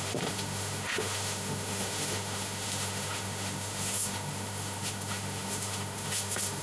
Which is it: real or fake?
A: fake